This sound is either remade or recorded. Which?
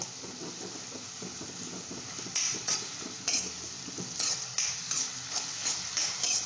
recorded